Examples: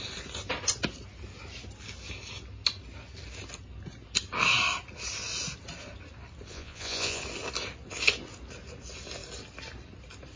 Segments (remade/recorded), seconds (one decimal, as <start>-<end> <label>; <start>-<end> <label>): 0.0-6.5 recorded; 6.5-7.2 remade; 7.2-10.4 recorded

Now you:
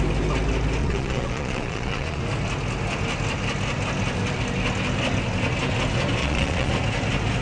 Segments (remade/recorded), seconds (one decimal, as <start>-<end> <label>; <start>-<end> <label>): 0.0-0.8 recorded; 0.8-2.2 remade; 2.2-6.2 recorded; 6.2-6.7 remade; 6.7-7.4 recorded

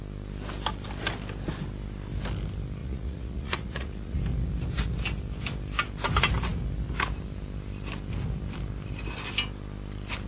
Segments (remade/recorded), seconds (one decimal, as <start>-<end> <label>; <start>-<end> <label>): 0.0-2.8 recorded; 2.8-4.2 remade; 4.2-10.3 recorded